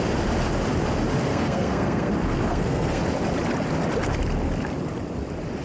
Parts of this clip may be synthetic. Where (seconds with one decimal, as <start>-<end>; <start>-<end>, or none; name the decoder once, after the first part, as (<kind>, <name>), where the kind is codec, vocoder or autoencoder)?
1.3-2.1 (codec, SNAC); 2.5-3.0